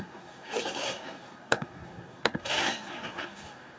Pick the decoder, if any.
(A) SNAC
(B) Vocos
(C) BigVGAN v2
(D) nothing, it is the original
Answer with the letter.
A